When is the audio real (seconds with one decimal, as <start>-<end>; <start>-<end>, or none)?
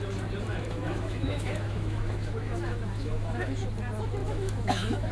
0.0-0.5; 3.6-4.2